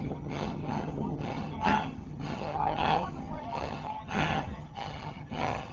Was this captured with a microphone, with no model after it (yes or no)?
no